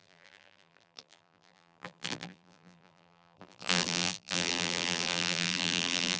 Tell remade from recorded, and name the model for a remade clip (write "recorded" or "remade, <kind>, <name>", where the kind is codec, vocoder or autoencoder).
remade, vocoder, BigVGAN v2